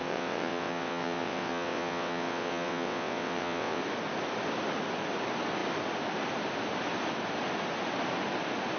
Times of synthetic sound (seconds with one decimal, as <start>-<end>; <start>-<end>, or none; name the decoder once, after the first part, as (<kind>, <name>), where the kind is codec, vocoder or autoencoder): 0.0-3.8 (vocoder, WaveNeXt)

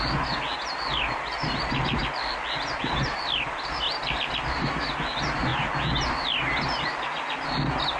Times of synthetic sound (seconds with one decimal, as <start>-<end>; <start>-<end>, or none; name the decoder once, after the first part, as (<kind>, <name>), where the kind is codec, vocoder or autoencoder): none

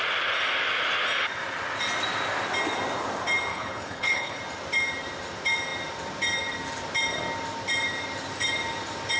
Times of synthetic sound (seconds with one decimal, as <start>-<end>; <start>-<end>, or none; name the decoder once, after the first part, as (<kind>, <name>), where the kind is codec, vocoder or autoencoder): 3.5-4.4 (codec, HILCodec)